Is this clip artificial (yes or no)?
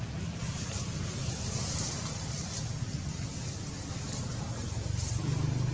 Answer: no